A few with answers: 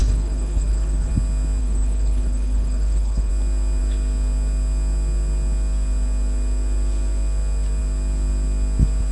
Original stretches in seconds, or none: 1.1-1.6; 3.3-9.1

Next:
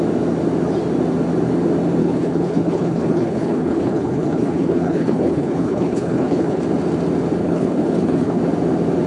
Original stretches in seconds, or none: 0.0-2.0; 6.6-7.4; 8.4-9.1

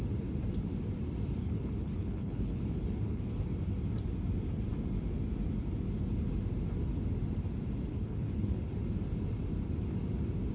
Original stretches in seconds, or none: 0.0-1.4; 3.5-7.9; 8.7-10.5

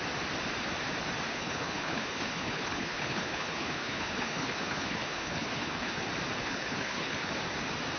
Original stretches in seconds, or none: 0.0-1.3; 6.0-6.4; 7.3-8.0

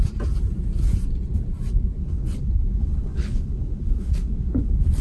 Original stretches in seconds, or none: 0.0-2.0